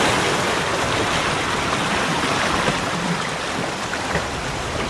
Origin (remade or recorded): recorded